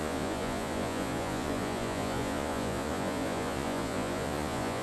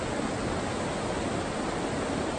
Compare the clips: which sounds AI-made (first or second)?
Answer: first